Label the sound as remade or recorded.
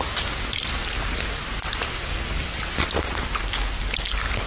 recorded